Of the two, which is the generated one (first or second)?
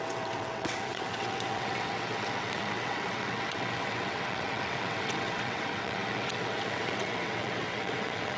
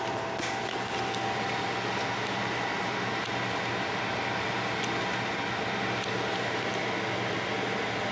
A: first